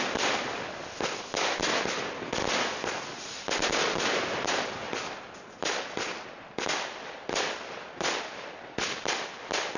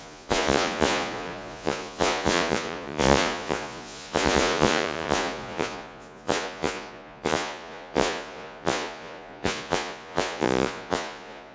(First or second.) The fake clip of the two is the second